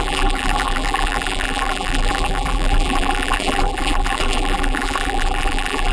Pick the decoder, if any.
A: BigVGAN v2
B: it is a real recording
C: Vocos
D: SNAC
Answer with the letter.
A